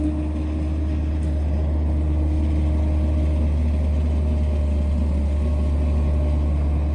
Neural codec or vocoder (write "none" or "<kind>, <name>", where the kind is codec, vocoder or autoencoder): none